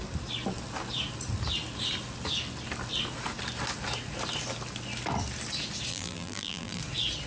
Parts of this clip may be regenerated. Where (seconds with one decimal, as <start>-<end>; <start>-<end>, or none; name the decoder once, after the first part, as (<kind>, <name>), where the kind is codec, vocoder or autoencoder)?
5.9-6.8 (vocoder, BigVGAN v2)